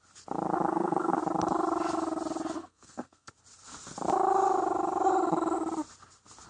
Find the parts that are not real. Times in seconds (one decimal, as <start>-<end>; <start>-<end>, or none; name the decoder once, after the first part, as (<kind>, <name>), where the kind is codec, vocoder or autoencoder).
0.7-1.2 (codec, SNAC); 2.6-3.3